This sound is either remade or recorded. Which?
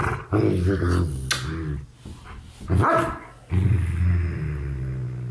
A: recorded